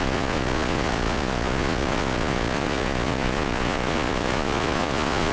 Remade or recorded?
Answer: remade